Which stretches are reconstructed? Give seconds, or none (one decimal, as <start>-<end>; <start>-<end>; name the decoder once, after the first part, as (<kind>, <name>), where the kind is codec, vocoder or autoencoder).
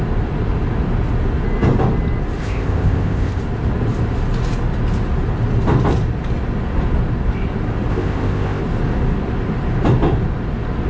2.4-3.4 (codec, ZipCodec); 7.9-8.6